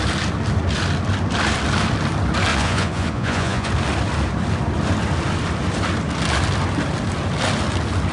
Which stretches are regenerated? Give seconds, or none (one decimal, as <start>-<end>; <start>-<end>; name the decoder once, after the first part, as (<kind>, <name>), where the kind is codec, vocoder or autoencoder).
2.5-3.7 (vocoder, Vocos)